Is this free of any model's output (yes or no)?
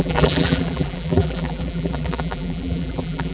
no